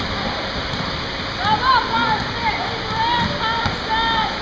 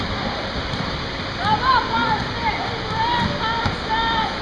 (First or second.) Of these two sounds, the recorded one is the first